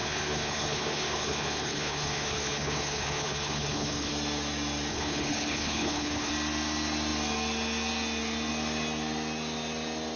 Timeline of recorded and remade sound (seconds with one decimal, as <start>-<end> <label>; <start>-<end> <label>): 0.0-4.1 remade; 4.1-4.9 recorded; 4.9-6.3 remade; 6.3-10.2 recorded